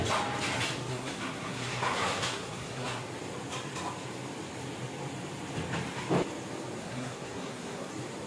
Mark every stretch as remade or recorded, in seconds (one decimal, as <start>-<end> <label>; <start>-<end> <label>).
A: 0.0-0.9 recorded; 0.9-3.0 remade; 3.0-6.8 recorded; 6.8-7.9 remade; 7.9-8.3 recorded